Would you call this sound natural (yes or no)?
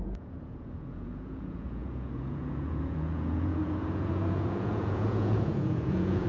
no